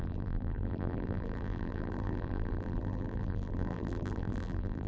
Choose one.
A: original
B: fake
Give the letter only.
B